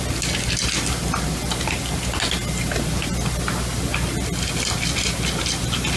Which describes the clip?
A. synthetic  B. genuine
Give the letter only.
B